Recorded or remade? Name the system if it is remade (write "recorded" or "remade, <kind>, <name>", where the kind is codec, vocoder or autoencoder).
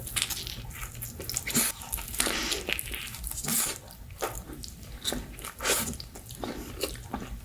recorded